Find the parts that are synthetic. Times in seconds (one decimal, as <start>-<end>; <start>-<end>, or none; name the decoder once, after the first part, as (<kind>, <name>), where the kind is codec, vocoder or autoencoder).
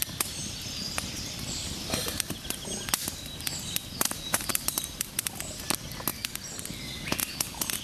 0.8-5.4 (vocoder, BigVGAN v2); 6.1-6.7; 7.2-7.8